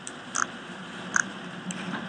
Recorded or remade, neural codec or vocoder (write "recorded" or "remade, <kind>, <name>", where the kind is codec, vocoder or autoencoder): recorded